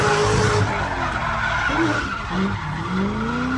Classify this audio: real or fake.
real